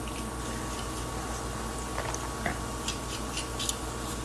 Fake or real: real